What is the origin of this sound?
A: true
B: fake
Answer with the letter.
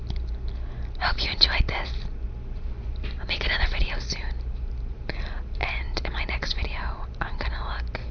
A